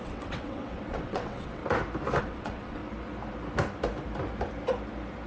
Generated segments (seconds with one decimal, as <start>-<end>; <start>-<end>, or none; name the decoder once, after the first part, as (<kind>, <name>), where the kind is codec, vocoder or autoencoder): 0.0-1.6 (vocoder, WaveNeXt); 2.2-2.8